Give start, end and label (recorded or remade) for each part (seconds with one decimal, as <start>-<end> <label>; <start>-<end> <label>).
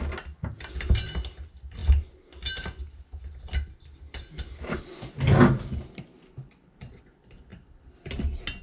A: 0.0-8.6 recorded